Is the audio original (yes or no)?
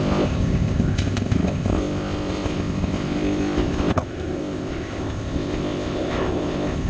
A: no